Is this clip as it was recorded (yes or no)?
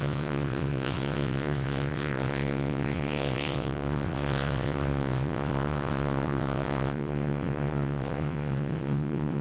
no